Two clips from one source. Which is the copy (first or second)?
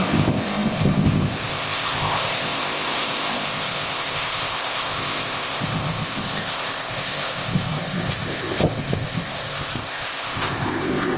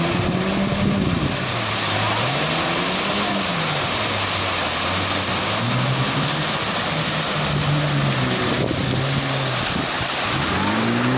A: first